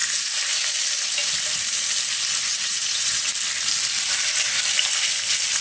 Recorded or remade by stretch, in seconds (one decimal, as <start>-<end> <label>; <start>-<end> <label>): 0.0-2.5 recorded; 2.5-3.3 remade; 3.3-5.6 recorded